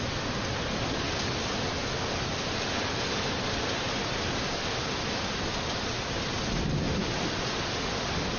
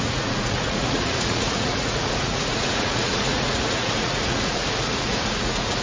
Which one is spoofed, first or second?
second